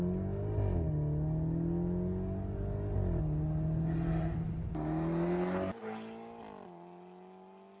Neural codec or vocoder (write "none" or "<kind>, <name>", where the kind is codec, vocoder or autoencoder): none